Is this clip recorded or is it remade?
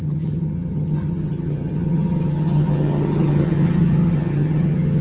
remade